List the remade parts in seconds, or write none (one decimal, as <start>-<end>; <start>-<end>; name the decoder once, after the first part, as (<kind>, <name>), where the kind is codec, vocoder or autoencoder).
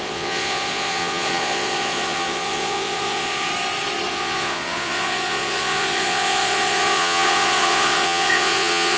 0.0-3.5 (vocoder, Vocos); 4.1-9.0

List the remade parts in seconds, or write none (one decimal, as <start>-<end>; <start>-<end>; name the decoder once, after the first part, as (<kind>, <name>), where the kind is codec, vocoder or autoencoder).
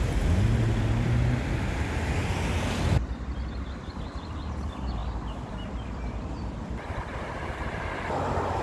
none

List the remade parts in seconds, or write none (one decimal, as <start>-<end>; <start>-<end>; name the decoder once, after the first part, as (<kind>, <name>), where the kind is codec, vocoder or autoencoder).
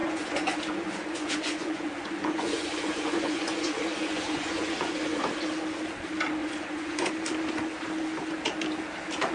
0.0-5.2 (vocoder, Vocos); 6.4-7.1